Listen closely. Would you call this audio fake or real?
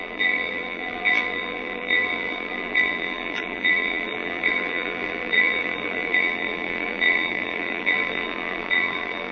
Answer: fake